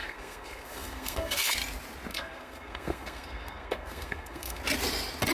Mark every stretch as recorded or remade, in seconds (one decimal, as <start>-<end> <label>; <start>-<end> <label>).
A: 0.0-1.5 remade; 1.5-2.1 recorded; 2.1-4.6 remade; 4.6-5.3 recorded